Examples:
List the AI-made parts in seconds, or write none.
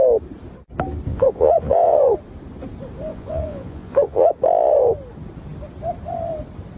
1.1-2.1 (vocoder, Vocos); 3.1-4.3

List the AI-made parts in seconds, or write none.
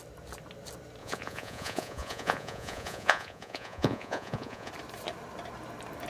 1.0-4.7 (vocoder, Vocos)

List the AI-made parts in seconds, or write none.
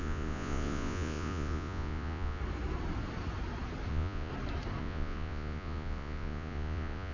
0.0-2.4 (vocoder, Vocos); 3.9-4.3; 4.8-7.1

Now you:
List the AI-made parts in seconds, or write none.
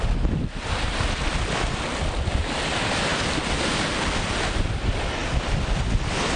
none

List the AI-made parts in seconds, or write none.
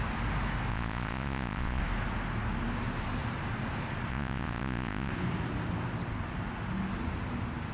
0.7-1.8 (vocoder, Vocos); 4.1-5.1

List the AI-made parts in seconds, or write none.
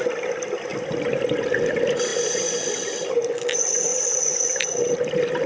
none